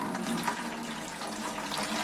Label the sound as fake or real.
real